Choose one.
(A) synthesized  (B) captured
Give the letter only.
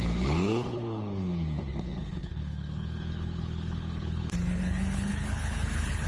A